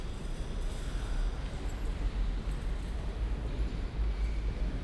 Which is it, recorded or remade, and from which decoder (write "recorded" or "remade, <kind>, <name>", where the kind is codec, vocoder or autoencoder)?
recorded